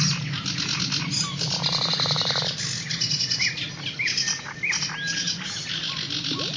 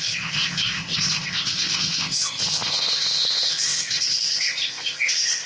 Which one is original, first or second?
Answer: first